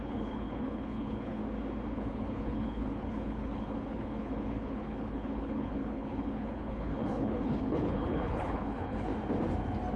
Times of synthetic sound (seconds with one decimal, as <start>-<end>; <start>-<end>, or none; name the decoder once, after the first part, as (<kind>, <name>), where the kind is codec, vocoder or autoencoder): 0.0-1.4 (codec, HILCodec); 1.9-9.1